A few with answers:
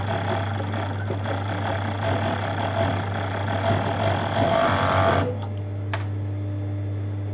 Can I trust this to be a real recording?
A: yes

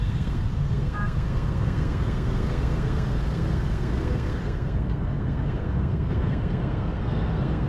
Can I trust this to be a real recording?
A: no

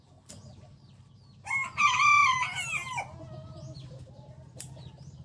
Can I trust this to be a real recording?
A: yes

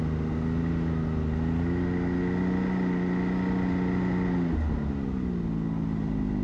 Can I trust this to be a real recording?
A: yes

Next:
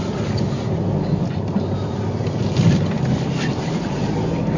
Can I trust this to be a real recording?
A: yes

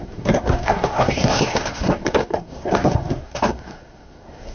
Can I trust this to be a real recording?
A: no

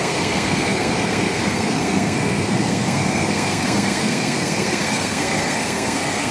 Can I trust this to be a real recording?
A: no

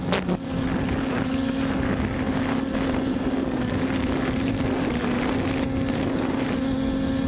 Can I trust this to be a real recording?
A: yes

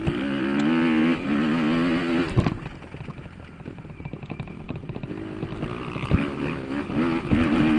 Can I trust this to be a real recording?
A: yes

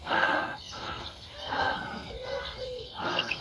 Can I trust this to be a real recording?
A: no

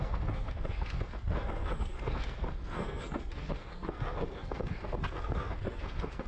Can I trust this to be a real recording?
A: no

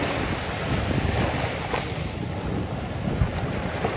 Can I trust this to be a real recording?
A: yes